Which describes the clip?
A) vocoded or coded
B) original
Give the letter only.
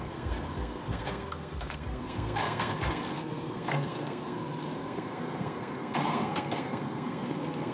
A